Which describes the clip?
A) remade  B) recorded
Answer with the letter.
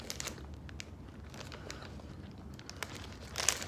B